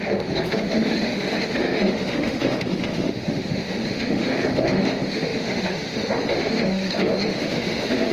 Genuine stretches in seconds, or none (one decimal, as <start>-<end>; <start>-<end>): none